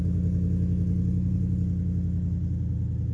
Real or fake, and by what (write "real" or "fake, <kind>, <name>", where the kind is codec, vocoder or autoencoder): real